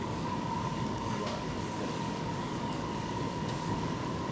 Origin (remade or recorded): remade